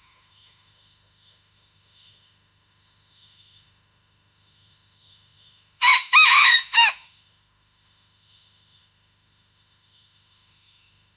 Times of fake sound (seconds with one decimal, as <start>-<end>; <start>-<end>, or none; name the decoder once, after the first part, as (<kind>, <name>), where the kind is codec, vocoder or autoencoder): 0.0-11.2 (autoencoder, DAC-VAE)